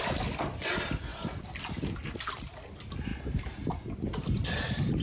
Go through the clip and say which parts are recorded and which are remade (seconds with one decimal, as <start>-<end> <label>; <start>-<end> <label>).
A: 0.0-5.0 recorded